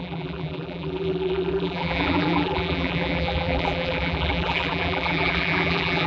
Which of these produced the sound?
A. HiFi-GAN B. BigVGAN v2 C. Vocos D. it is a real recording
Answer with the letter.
B